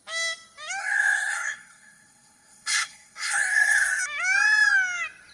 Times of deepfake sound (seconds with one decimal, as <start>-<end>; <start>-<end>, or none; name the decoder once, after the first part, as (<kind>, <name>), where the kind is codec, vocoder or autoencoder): 0.8-4.0 (codec, SNAC)